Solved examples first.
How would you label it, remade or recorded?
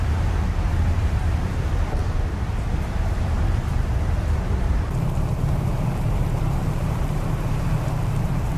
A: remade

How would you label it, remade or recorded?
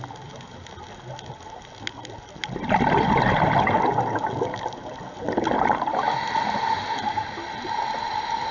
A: recorded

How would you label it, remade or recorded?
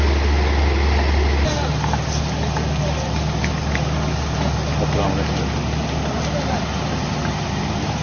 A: recorded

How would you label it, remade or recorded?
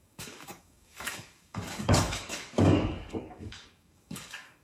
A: remade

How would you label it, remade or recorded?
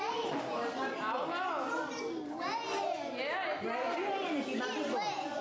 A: recorded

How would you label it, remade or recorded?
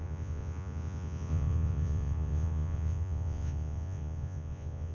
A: remade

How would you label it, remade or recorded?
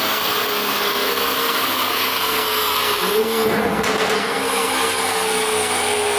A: remade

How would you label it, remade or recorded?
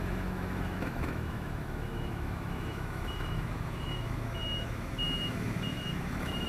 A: remade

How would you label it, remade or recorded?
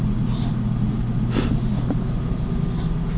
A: recorded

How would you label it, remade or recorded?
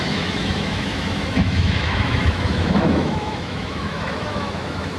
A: remade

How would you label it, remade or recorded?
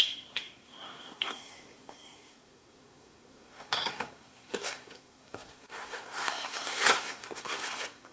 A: remade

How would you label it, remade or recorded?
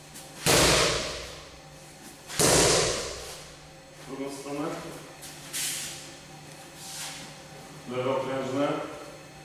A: recorded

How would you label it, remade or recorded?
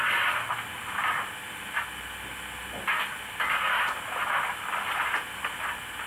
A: recorded